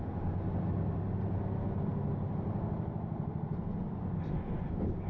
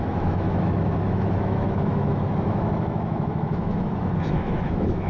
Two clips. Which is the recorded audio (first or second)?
first